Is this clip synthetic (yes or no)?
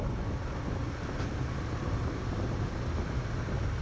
no